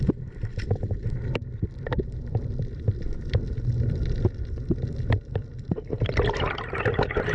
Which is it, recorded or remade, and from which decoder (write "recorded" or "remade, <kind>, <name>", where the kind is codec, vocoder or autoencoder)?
remade, vocoder, BigVGAN v2